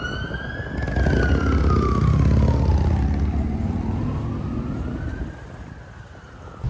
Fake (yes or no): no